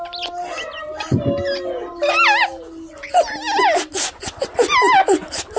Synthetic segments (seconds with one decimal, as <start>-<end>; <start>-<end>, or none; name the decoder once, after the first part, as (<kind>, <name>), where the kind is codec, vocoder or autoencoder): none